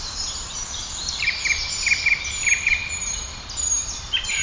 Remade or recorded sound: remade